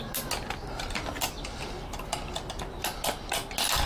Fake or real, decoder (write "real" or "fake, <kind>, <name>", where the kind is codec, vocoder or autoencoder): real